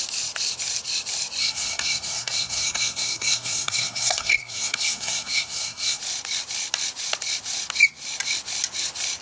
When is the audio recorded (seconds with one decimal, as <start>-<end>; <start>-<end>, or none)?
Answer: 0.0-1.4; 6.0-9.2